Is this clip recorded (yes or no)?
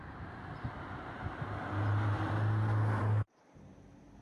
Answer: yes